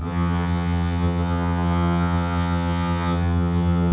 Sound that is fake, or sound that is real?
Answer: fake